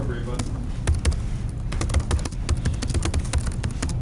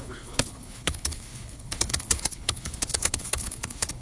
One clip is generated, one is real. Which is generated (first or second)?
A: second